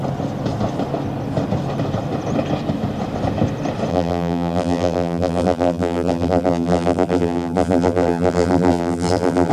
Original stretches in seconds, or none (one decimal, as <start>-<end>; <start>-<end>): 0.0-3.9